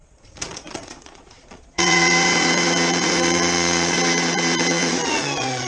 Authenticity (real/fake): fake